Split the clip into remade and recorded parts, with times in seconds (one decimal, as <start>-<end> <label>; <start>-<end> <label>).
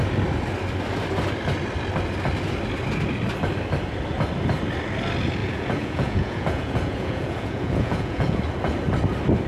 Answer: 0.0-5.4 recorded; 5.4-8.4 remade; 8.4-9.5 recorded